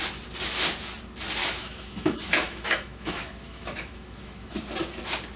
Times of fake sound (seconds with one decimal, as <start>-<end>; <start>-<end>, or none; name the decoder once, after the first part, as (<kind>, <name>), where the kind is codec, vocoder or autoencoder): 1.4-4.6 (autoencoder, DAC-VAE)